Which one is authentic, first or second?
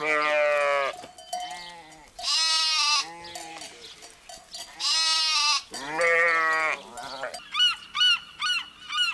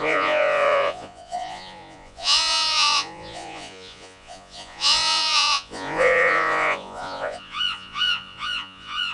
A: first